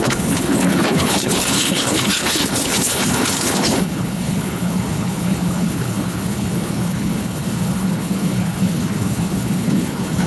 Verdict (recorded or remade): remade